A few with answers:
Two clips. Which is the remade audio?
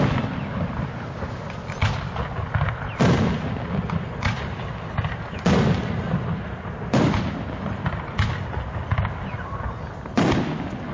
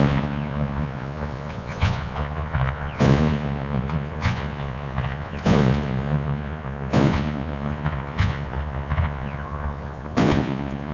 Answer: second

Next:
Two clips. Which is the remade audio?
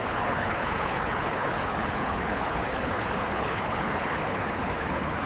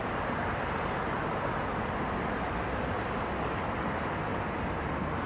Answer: first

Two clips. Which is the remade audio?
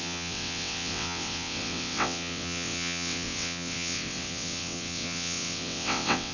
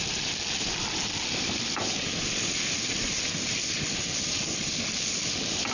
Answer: first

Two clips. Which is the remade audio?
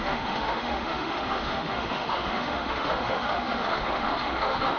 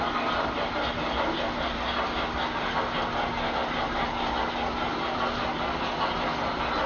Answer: first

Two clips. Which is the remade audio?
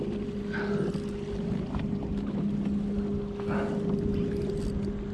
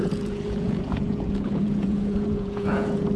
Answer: second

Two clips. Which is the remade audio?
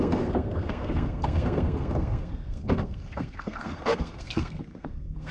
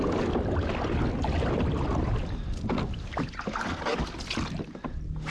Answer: first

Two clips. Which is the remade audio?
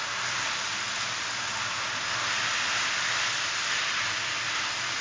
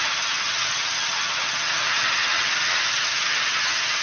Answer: second